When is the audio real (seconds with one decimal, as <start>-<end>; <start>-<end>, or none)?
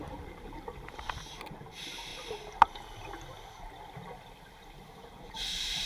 2.1-4.6